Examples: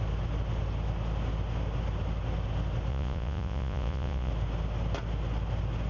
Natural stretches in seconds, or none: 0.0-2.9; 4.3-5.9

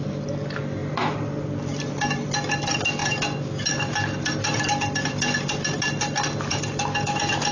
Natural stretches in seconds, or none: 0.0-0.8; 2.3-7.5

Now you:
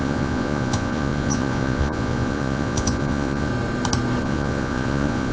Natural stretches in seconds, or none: 3.5-4.2

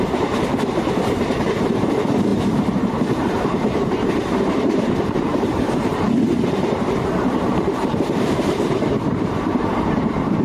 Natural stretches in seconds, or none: none

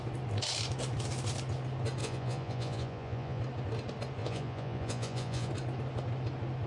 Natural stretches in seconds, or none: 0.0-2.0; 3.4-4.2; 5.5-6.7